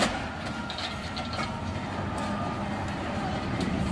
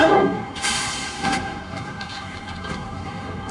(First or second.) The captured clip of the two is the first